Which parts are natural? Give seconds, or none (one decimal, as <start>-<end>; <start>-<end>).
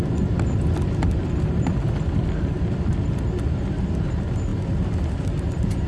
0.0-5.9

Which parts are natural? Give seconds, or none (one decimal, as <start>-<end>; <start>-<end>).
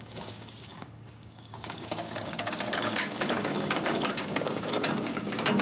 none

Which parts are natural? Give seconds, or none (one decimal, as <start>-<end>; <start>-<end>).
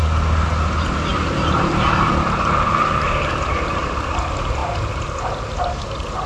0.0-1.1; 3.8-6.3